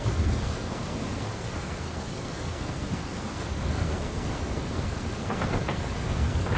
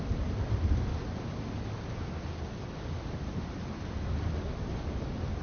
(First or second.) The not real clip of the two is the first